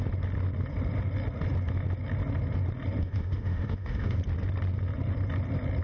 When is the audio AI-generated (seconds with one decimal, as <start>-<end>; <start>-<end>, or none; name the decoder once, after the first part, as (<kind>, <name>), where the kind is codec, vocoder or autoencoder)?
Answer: 3.0-4.2 (autoencoder, DAC-VAE)